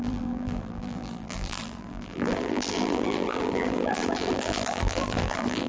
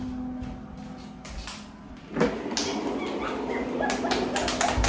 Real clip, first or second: second